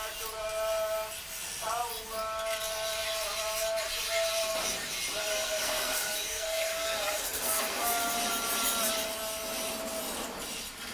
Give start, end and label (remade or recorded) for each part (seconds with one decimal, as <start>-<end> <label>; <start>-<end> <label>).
0.0-5.2 recorded; 5.2-8.1 remade; 8.1-10.9 recorded